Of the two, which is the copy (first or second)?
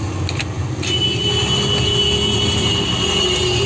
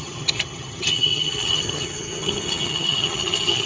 second